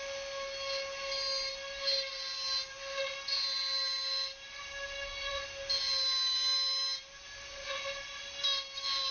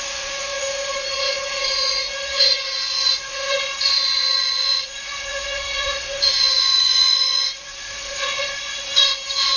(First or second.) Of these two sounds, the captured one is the first